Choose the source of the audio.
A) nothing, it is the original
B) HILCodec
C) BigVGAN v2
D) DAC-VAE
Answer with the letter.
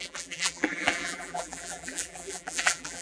C